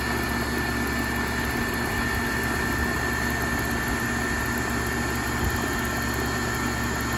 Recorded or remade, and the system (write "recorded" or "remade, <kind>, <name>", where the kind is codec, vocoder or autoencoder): recorded